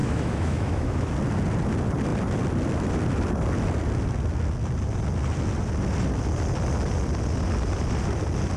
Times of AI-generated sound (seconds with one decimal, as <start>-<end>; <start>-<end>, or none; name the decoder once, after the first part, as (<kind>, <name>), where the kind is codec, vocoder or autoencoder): 0.0-1.1 (autoencoder, DAC-VAE)